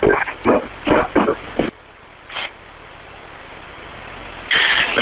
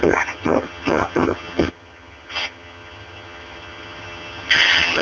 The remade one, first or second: second